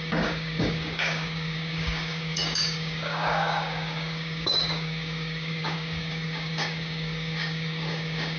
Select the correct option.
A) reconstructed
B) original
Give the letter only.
A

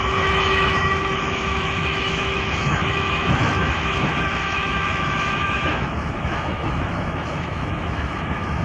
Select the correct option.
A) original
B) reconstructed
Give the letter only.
B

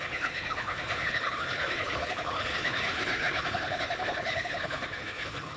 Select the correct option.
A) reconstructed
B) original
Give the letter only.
A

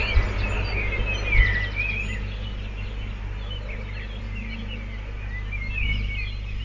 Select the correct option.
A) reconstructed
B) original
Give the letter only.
B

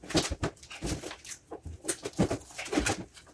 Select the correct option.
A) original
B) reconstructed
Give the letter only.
A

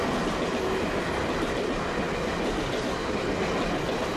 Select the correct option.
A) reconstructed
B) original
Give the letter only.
B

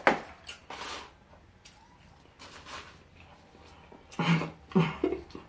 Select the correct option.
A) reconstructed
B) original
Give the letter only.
B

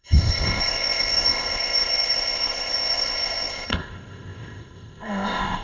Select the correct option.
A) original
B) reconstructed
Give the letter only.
B